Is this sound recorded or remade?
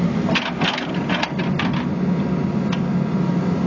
recorded